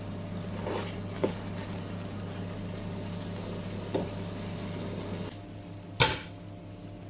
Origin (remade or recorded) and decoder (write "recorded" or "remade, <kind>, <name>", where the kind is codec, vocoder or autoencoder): recorded